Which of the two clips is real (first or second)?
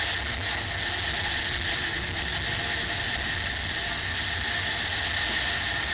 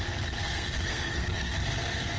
first